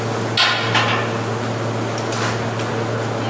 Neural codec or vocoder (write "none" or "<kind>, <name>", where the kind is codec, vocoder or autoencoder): none